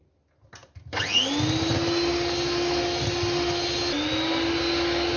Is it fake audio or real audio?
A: real